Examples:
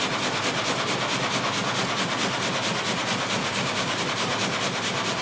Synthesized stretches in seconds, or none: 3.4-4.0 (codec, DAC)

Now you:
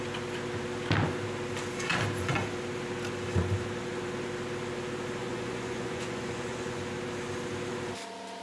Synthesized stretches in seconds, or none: 5.2-6.8 (vocoder, Vocos)

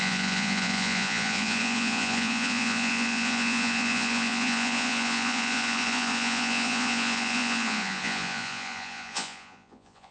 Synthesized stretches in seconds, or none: 0.0-10.1 (vocoder, Vocos)